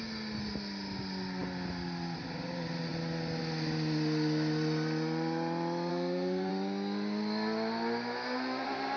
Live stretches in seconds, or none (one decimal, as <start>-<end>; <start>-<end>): 0.0-5.9; 6.5-9.0